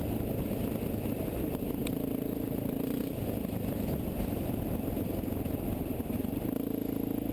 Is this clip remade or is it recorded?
recorded